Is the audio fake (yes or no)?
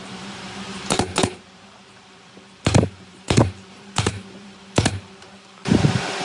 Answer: yes